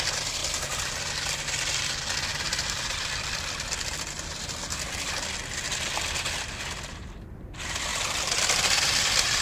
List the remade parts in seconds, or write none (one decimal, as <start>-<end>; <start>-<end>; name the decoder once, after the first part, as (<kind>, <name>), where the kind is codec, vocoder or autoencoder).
2.3-3.1 (vocoder, BigVGAN v2); 7.9-8.6